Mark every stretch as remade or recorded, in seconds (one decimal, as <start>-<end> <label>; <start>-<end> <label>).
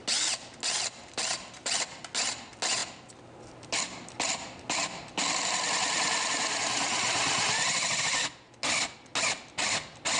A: 0.0-10.2 recorded